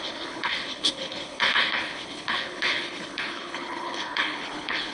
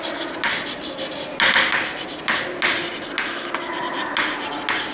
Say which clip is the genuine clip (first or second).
second